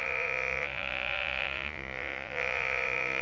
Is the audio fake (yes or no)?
yes